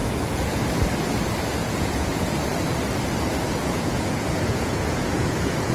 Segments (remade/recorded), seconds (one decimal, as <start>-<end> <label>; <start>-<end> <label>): 0.0-0.6 remade; 0.6-1.6 recorded; 1.6-2.3 remade; 2.3-3.6 recorded; 3.6-5.7 remade